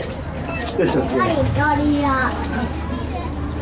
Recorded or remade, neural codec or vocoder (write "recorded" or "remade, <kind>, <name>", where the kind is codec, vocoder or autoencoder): recorded